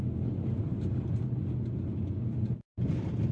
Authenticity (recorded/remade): recorded